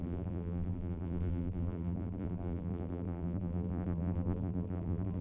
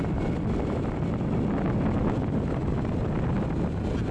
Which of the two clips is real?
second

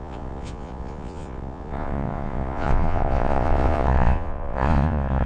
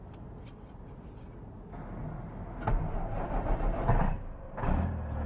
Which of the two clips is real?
second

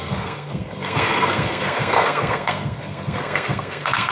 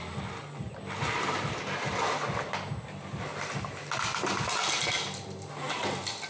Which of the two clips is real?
second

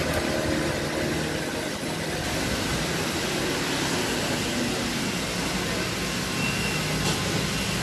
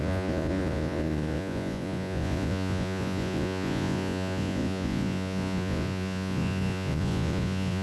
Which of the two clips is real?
first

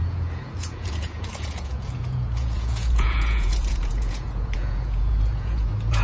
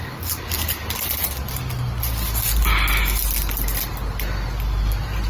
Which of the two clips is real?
second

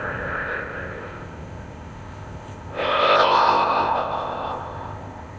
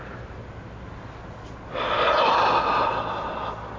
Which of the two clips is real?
second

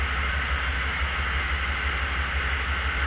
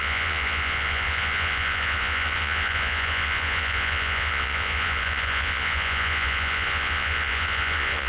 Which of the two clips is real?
first